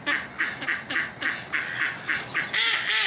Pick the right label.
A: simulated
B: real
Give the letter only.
B